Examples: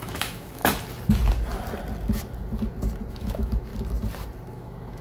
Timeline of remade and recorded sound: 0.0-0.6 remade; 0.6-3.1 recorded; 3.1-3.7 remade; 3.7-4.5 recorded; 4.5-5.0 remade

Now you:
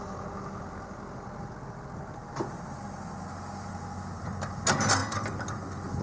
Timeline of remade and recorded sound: 0.0-6.0 recorded